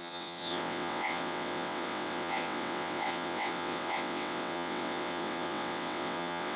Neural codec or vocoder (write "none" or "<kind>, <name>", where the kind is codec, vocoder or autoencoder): vocoder, WaveNeXt